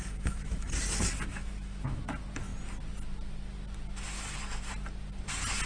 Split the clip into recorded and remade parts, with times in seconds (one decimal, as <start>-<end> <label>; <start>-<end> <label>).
0.0-0.8 remade; 0.8-1.3 recorded; 1.3-2.0 remade; 2.0-5.7 recorded